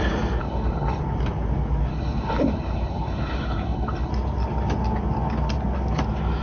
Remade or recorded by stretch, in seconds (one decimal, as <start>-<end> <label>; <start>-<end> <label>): 0.0-0.4 recorded; 0.4-1.0 remade; 1.0-1.9 recorded; 1.9-4.1 remade; 4.1-6.4 recorded